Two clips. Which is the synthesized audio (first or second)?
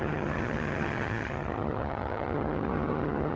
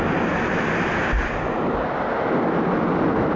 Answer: first